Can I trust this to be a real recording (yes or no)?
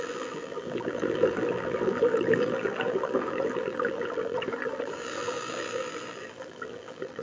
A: no